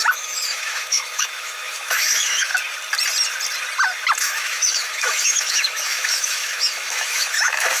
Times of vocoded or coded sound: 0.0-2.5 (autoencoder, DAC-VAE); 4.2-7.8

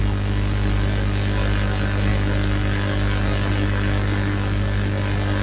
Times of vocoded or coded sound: none

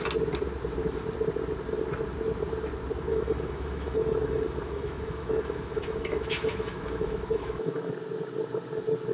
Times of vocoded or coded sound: 3.1-7.9 (autoencoder, DAC-VAE)

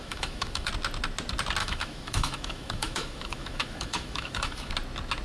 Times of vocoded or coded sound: 0.0-0.7 (autoencoder, DAC-VAE); 1.6-4.7

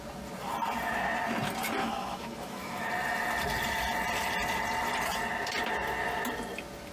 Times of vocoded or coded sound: 1.8-2.9 (autoencoder, DAC-VAE)

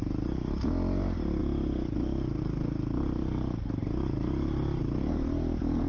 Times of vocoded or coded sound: none

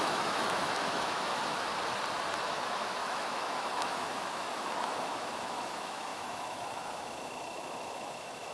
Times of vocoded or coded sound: 0.0-1.7 (autoencoder, DAC-VAE); 2.4-8.5